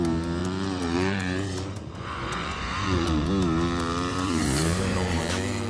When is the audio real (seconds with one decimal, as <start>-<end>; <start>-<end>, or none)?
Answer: 0.0-0.4; 3.3-4.1; 5.2-5.7